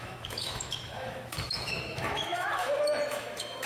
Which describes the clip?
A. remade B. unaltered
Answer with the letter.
A